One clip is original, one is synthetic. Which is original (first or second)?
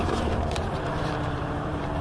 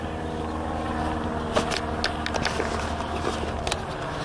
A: second